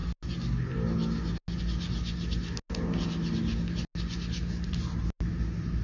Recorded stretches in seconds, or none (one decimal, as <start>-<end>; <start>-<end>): 0.0-5.8